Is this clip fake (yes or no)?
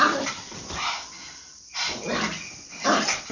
no